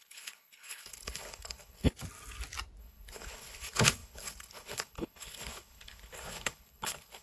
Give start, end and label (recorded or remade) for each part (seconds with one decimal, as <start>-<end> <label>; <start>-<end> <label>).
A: 0.0-1.9 remade; 1.9-2.8 recorded; 2.8-7.2 remade

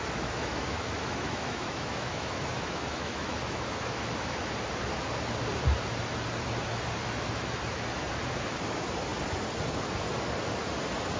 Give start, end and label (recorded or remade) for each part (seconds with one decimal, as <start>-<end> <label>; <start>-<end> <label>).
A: 0.0-4.5 remade; 4.5-11.2 recorded

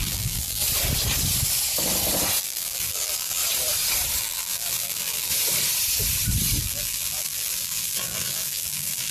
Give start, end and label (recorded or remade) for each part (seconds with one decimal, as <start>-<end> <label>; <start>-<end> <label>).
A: 0.0-0.6 remade; 0.6-2.4 recorded; 2.4-3.4 remade; 3.4-4.2 recorded; 4.2-5.3 remade; 5.3-6.6 recorded; 6.6-9.1 remade

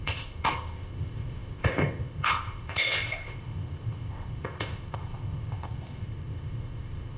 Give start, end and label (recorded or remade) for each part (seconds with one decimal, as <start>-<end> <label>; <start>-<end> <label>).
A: 0.0-7.2 remade

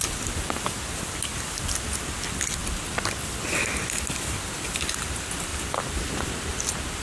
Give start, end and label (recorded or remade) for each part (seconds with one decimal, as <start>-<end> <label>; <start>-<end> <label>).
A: 0.0-7.0 recorded

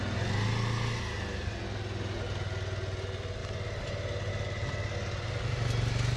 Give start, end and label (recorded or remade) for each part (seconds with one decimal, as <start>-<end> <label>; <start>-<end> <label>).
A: 0.0-6.2 recorded